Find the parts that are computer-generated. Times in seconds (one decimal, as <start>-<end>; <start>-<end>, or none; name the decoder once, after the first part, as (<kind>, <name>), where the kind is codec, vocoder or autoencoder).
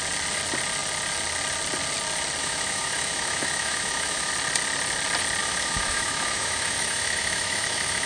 2.4-4.3 (autoencoder, DAC-VAE); 5.4-8.1